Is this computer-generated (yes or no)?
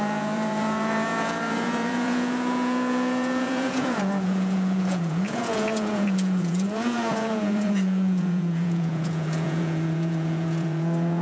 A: yes